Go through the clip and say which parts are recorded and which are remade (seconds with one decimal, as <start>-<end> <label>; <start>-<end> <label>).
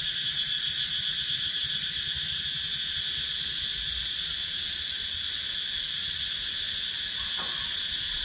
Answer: 0.0-1.6 recorded; 1.6-2.4 remade; 2.4-3.7 recorded; 3.7-6.2 remade; 6.2-8.2 recorded